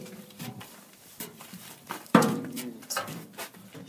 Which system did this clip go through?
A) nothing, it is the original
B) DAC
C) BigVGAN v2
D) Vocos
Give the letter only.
C